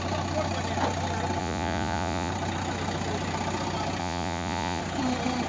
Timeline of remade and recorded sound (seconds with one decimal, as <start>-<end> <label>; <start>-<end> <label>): 0.0-1.4 recorded; 1.4-2.3 remade; 2.3-4.0 recorded; 4.0-4.8 remade; 4.8-5.5 recorded